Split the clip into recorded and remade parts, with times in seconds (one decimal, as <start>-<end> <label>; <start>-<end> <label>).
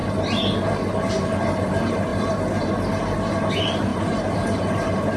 0.0-1.1 recorded; 1.1-2.1 remade; 2.1-3.5 recorded; 3.5-5.2 remade